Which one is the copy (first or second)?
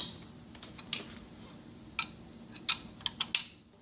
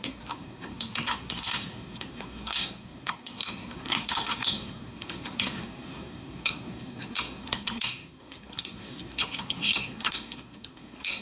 second